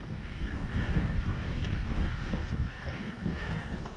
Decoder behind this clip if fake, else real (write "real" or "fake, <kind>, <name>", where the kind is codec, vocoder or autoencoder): fake, codec, DAC